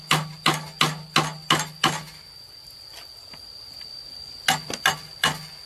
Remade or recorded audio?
recorded